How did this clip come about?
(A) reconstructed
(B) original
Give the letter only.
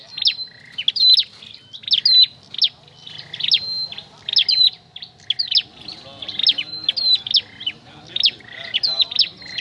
B